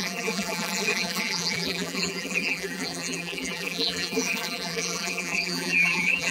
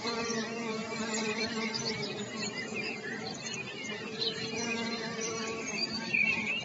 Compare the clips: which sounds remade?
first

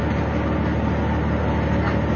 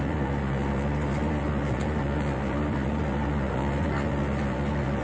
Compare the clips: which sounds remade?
second